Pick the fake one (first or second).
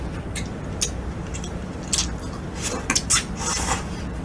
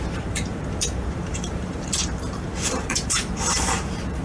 second